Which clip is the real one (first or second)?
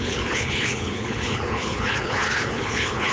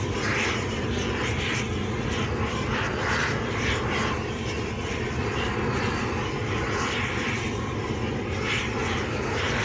second